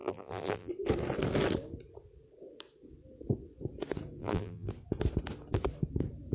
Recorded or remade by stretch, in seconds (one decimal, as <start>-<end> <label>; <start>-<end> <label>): 0.0-0.7 remade; 0.7-4.2 recorded; 4.2-4.7 remade; 4.7-6.3 recorded

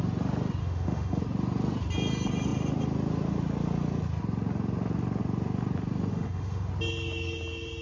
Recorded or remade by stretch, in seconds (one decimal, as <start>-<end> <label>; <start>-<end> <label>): 0.0-0.6 recorded; 0.6-1.2 remade; 1.2-6.1 recorded; 6.1-6.7 remade; 6.7-7.8 recorded